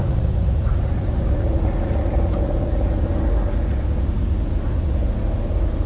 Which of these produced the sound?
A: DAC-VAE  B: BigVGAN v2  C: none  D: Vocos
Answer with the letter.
D